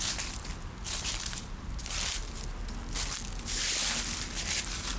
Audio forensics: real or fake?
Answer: real